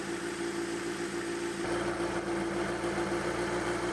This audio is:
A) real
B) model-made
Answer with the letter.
A